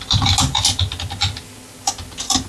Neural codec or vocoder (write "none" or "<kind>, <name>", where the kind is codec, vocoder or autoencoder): none